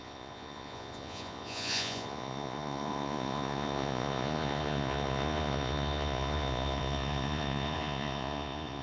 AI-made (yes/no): yes